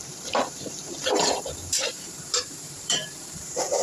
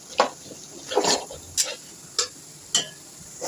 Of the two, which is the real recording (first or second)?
second